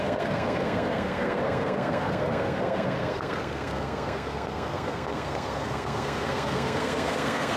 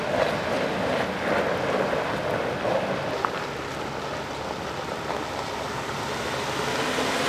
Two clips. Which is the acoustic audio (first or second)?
second